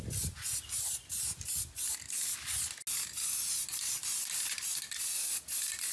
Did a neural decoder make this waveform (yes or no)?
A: no